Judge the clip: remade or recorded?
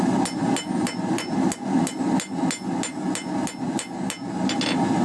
recorded